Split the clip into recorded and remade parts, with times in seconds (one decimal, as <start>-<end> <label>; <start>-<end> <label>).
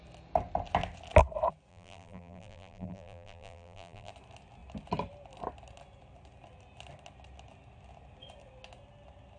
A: 0.0-1.7 recorded; 1.7-4.1 remade; 4.1-9.4 recorded